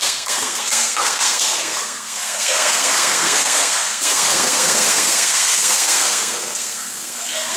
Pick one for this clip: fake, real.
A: fake